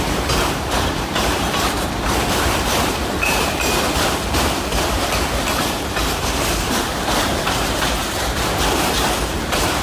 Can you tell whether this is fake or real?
fake